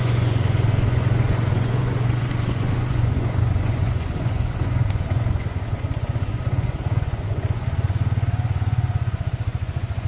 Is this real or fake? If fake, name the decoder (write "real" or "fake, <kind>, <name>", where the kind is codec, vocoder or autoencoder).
fake, vocoder, Vocos